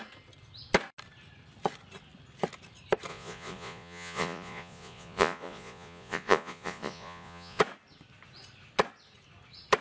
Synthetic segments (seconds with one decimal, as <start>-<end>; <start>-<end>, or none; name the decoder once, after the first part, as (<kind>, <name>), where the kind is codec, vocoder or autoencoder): 3.1-7.6 (vocoder, Vocos)